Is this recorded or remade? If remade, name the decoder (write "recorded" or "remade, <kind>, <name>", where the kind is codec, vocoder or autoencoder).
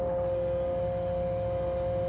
recorded